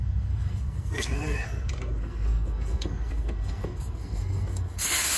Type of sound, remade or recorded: remade